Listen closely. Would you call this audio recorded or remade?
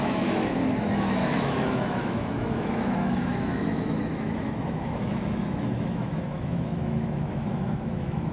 remade